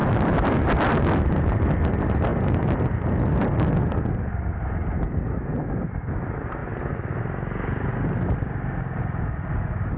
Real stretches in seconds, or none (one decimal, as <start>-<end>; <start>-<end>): 0.0-10.0